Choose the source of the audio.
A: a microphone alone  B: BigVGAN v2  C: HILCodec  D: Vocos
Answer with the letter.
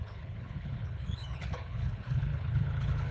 C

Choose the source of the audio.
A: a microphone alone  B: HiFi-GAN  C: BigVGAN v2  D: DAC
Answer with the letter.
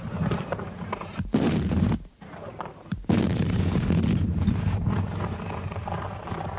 C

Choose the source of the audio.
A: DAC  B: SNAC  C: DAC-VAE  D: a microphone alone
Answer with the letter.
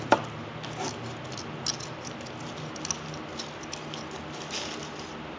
D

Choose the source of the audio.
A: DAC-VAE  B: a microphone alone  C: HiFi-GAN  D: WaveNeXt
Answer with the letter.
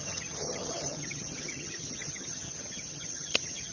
C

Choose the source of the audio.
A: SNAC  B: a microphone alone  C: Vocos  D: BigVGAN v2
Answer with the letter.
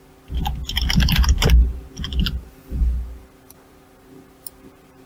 B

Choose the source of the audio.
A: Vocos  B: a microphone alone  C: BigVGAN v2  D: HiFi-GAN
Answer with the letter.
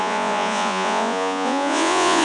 A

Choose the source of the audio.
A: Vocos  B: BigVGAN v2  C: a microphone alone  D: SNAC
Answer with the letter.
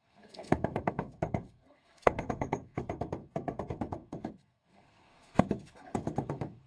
D